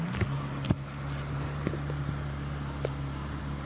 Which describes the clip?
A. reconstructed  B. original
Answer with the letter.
B